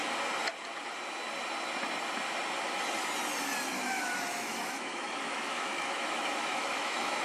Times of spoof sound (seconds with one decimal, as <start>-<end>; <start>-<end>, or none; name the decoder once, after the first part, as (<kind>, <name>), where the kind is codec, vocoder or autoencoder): 3.7-7.2 (autoencoder, DAC-VAE)